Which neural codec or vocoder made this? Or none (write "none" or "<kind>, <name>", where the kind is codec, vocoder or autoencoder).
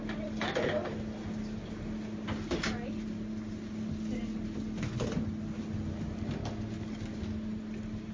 none